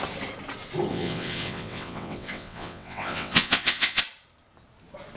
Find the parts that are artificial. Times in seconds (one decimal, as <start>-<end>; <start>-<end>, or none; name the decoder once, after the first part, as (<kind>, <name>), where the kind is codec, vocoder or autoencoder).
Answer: 0.9-4.0 (vocoder, WaveNeXt)